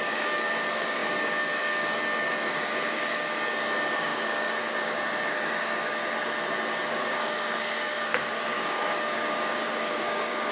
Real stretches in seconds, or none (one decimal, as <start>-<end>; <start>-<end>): 6.0-6.9